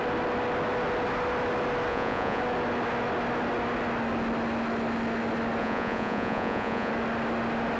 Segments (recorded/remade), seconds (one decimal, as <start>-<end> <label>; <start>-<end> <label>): 0.0-1.9 recorded; 1.9-2.4 remade; 2.4-5.6 recorded; 5.6-6.9 remade; 6.9-7.8 recorded